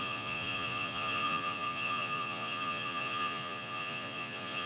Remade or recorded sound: remade